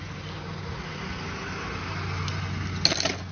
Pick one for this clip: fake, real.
real